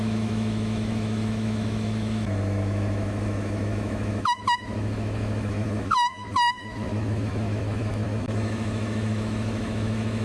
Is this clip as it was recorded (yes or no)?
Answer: no